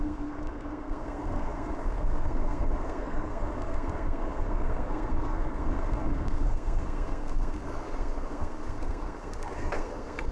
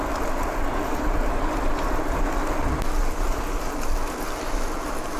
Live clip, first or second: second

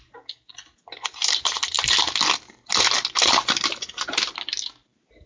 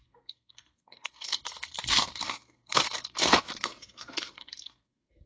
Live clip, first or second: first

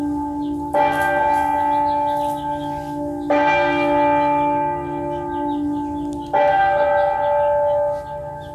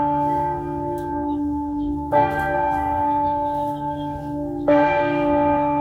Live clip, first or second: first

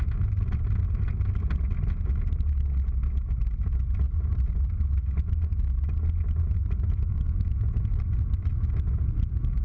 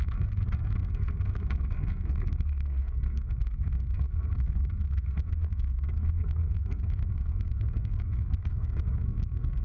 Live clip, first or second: first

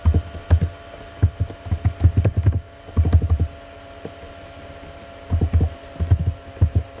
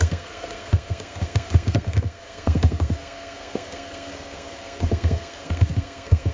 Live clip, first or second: first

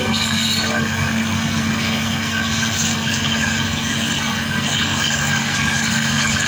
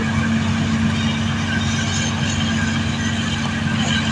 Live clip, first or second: second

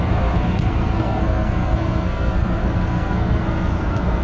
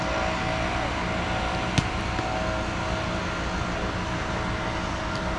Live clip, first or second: second